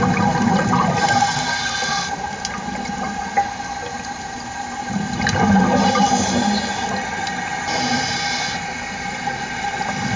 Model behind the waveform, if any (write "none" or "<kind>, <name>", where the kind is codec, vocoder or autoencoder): none